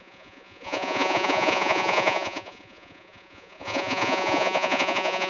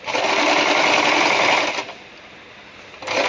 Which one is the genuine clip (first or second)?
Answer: second